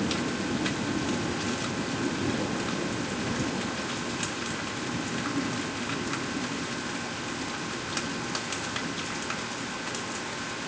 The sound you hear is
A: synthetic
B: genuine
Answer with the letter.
B